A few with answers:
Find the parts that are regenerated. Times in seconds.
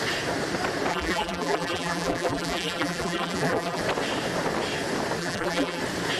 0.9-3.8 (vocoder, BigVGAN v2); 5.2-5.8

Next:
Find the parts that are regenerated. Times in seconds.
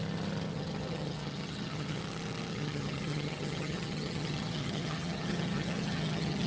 0.5-2.0 (vocoder, HiFi-GAN); 2.5-6.5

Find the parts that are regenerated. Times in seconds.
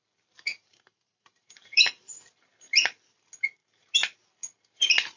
0.5-2.1 (vocoder, BigVGAN v2)